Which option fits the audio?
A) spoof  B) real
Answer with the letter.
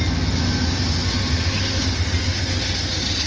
B